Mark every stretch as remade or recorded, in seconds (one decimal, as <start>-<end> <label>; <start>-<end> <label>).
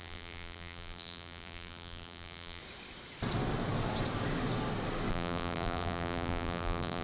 0.0-2.6 remade; 2.6-5.1 recorded; 5.1-7.0 remade